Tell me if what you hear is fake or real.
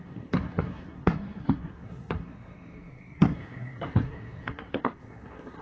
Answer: fake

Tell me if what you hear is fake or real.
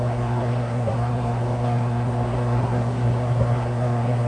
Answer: fake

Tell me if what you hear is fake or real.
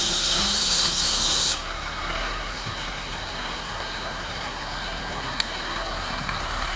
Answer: fake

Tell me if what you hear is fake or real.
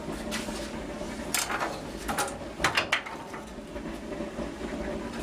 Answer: real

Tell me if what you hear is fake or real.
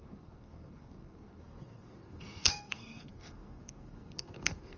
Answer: fake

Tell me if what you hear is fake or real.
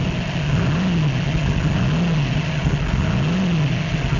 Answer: real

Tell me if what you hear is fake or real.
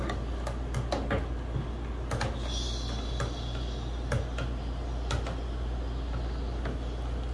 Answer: real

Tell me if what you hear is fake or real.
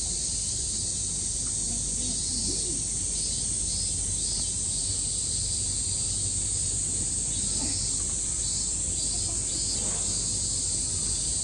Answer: real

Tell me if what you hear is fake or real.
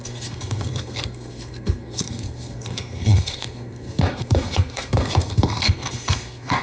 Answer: fake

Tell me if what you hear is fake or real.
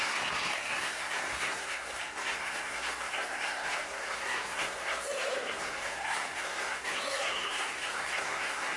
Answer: fake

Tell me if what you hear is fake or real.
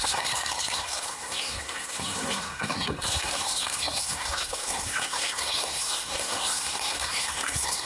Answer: fake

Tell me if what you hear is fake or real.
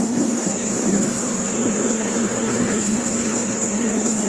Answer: fake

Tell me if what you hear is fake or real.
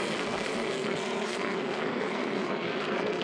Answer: fake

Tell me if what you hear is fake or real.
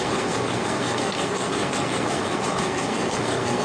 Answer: fake